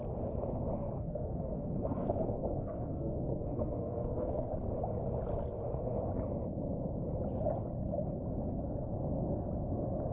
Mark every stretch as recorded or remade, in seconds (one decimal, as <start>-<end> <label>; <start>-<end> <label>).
0.0-0.8 recorded; 0.8-4.5 remade; 4.5-10.1 recorded